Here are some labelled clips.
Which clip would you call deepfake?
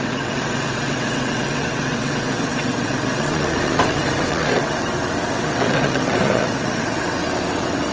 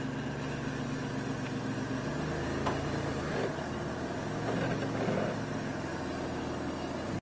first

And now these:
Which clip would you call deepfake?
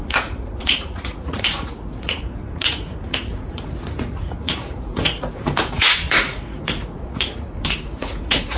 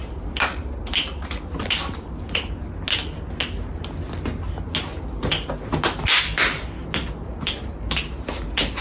first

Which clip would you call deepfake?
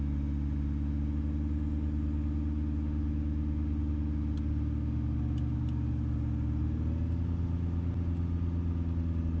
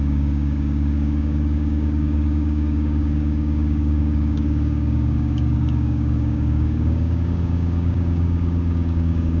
second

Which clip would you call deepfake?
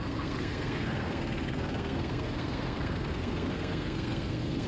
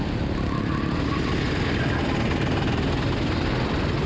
first